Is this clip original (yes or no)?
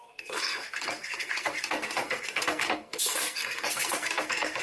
no